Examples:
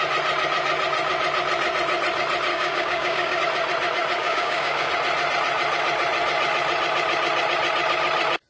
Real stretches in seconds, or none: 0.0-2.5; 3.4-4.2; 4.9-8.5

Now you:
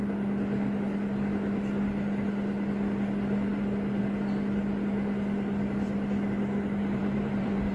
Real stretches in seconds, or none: 0.0-7.0